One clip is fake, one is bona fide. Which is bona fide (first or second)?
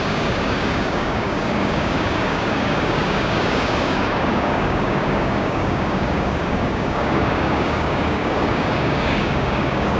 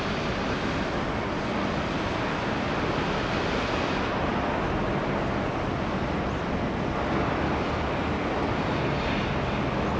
second